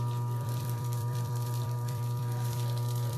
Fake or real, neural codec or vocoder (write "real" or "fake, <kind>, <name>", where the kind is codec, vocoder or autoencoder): fake, vocoder, BigVGAN v2